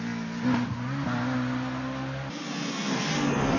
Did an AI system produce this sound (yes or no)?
no